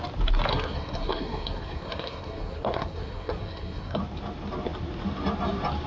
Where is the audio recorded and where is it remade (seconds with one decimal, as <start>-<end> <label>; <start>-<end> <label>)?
0.0-0.5 recorded; 0.5-4.0 remade; 4.0-5.9 recorded